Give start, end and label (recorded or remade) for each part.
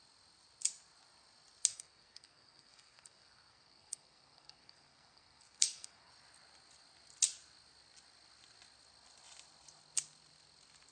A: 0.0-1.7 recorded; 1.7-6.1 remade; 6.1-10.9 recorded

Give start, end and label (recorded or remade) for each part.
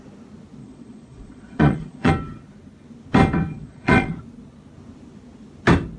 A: 0.0-0.6 recorded; 0.6-2.1 remade; 2.1-3.5 recorded; 3.5-4.1 remade; 4.1-6.0 recorded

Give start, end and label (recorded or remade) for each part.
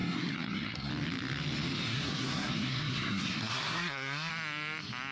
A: 0.0-0.9 remade; 0.9-1.9 recorded; 1.9-4.3 remade; 4.3-5.1 recorded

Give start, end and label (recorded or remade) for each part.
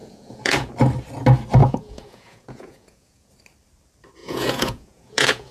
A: 0.0-0.7 remade; 0.7-1.6 recorded; 1.6-3.3 remade; 3.3-4.2 recorded; 4.2-5.5 remade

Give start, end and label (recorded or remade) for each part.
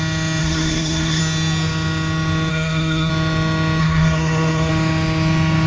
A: 0.0-0.4 recorded; 0.4-1.2 remade; 1.2-2.5 recorded; 2.5-3.1 remade; 3.1-3.8 recorded; 3.8-4.7 remade; 4.7-5.7 recorded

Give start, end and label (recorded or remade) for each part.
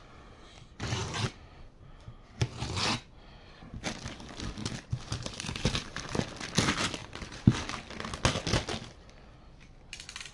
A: 0.0-4.6 recorded; 4.6-6.2 remade; 6.2-7.0 recorded; 7.0-7.9 remade; 7.9-10.3 recorded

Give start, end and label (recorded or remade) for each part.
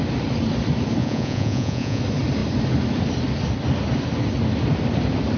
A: 0.0-1.0 recorded; 1.0-2.0 remade; 2.0-5.4 recorded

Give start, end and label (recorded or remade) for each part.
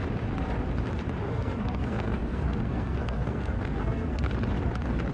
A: 0.0-1.2 recorded; 1.2-4.3 remade; 4.3-5.1 recorded